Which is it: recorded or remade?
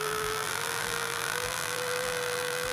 remade